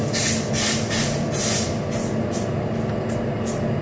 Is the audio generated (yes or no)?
no